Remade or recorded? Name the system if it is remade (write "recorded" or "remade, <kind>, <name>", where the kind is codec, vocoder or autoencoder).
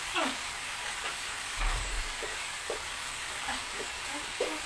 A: remade, codec, DAC